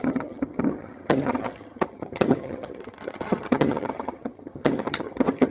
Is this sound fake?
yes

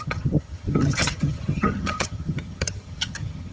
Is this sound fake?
yes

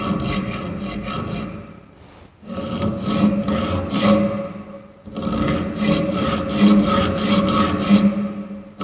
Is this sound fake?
no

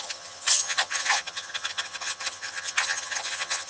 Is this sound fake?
yes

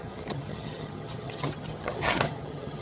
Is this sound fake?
yes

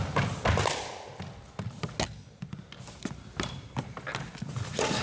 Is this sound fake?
no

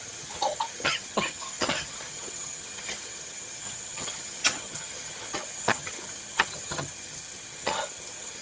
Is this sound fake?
yes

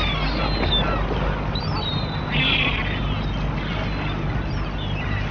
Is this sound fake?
no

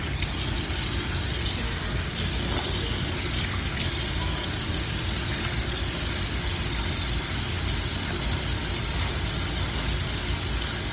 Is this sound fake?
no